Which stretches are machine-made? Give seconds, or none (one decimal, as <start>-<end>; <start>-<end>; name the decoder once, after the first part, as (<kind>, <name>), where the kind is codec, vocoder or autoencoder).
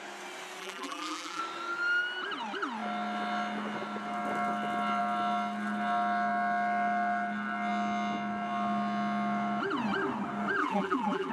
0.6-1.4 (vocoder, BigVGAN v2); 10.6-11.3